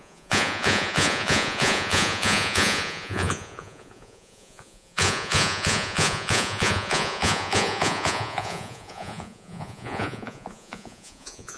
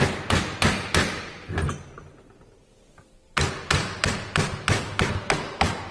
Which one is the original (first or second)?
second